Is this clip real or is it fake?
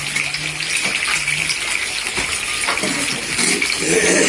real